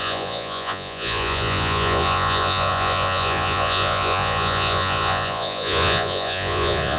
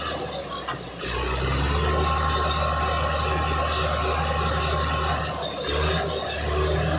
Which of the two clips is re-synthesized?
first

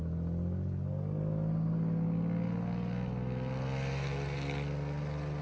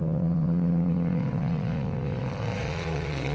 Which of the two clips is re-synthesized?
second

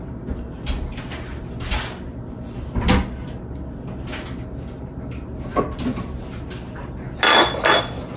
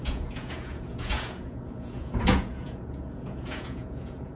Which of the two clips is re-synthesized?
second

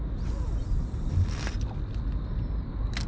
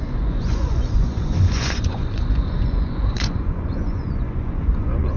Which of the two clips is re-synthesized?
second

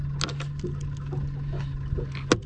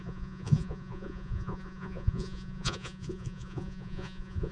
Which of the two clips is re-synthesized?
second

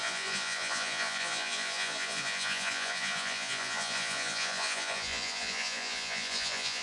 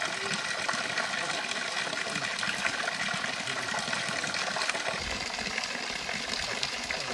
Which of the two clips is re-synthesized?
first